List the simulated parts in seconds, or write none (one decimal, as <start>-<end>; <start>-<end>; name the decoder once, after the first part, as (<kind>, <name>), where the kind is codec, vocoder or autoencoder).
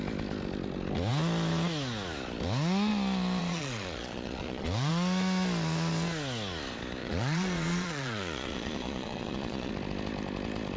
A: 3.4-4.9 (vocoder, Vocos); 7.0-9.7